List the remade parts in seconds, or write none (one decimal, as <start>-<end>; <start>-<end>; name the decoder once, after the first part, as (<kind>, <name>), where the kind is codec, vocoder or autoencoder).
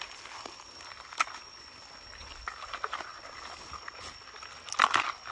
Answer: none